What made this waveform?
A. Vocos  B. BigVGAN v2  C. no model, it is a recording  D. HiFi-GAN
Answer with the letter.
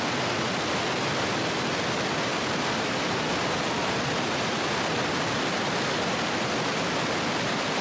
C